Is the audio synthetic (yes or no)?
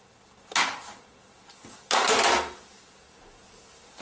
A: no